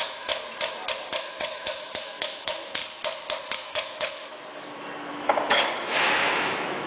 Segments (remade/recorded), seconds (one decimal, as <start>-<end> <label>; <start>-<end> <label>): 0.0-0.4 remade; 0.4-1.1 recorded; 1.1-2.8 remade; 2.8-3.5 recorded; 3.5-4.3 remade; 4.3-5.1 recorded; 5.1-6.9 remade